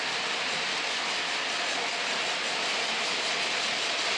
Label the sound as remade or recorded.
recorded